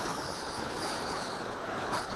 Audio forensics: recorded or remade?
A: remade